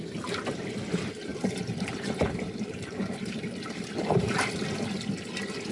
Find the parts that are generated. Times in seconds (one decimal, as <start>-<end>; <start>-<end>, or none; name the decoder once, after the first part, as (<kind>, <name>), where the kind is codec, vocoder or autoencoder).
1.3-4.7 (vocoder, BigVGAN v2)